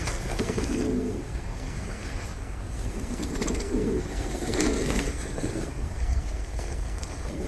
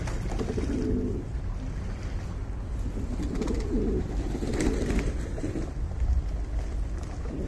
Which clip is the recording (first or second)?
second